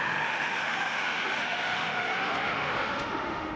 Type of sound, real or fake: fake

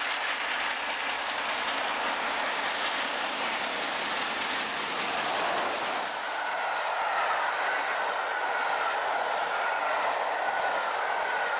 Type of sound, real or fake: real